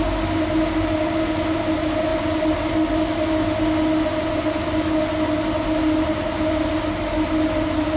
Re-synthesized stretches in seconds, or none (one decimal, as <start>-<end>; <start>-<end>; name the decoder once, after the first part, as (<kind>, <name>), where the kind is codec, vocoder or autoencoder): 2.1-2.7 (vocoder, BigVGAN v2)